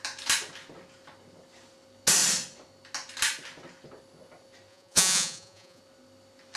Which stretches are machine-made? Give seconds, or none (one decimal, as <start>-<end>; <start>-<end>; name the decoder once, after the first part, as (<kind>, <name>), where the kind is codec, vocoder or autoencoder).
4.7-5.8 (vocoder, Vocos)